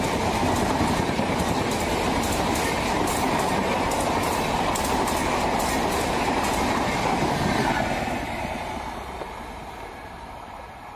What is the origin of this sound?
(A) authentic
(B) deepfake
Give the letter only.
A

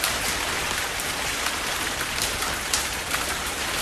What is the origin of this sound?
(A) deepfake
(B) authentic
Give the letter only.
A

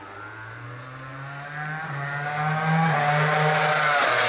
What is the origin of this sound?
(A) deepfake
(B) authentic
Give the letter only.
B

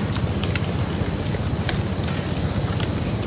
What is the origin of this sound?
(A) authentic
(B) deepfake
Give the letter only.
A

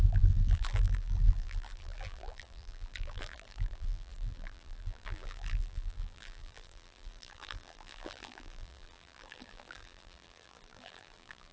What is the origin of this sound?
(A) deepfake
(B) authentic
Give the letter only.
A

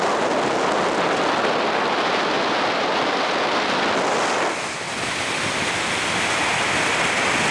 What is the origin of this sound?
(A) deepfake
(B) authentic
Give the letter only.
B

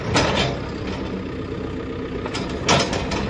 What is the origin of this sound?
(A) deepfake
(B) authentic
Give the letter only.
B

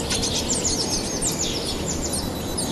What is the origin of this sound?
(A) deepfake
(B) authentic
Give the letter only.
B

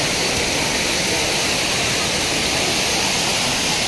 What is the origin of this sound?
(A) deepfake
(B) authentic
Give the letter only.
B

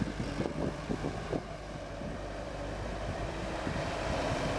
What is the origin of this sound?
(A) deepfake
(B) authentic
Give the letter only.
A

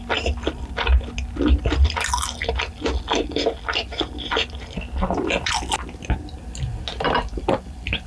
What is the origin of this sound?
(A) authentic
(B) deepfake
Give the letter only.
A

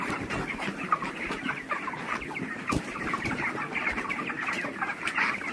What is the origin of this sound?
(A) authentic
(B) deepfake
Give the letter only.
B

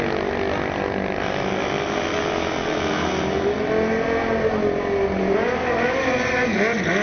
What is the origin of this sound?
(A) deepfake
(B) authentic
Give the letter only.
B